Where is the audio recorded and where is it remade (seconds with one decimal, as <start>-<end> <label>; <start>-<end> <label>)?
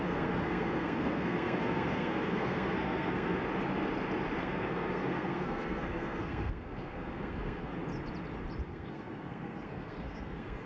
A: 0.0-3.4 remade; 3.4-4.4 recorded; 4.4-7.7 remade; 7.7-8.7 recorded; 8.7-10.7 remade